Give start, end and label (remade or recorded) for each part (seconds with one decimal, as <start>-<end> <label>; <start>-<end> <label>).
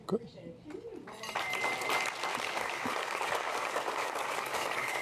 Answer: 0.0-2.3 recorded; 2.3-5.0 remade